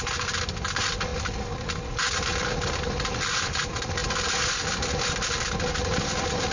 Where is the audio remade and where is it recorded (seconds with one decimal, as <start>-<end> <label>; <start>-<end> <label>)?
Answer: 0.0-6.5 recorded